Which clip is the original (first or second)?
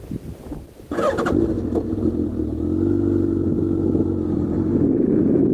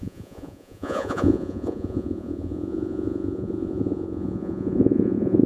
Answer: first